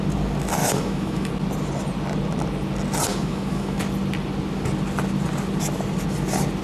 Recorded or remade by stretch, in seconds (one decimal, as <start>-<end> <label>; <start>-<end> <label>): 0.0-0.6 recorded; 0.6-1.3 remade; 1.3-3.1 recorded; 3.1-3.8 remade; 3.8-6.6 recorded